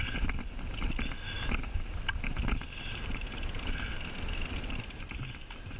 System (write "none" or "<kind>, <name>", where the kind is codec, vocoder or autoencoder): none